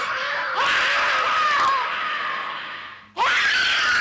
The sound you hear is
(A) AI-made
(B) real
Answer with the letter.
B